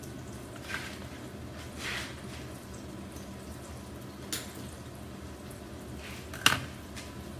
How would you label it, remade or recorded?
recorded